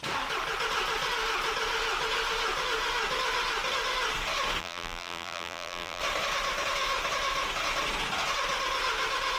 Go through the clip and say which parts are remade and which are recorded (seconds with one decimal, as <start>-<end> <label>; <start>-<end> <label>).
0.0-4.6 recorded; 4.6-6.0 remade; 6.0-9.4 recorded